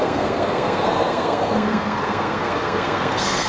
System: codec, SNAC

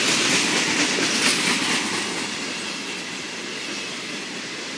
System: none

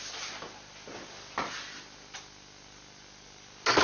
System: none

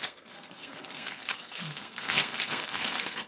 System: codec, SNAC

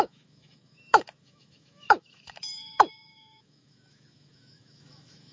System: autoencoder, DAC-VAE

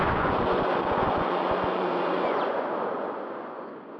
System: vocoder, Vocos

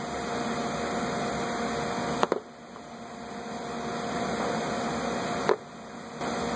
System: none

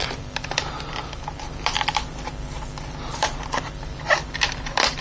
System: vocoder, BigVGAN v2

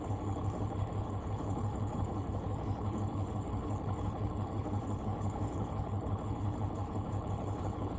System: codec, HILCodec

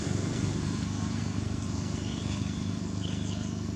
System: codec, SNAC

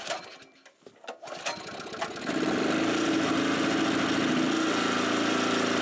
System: none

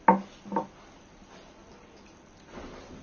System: none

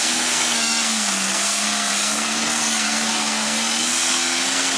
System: codec, SNAC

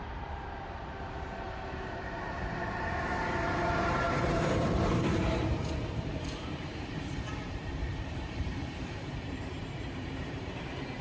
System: vocoder, BigVGAN v2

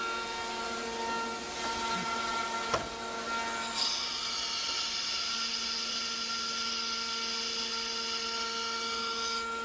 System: none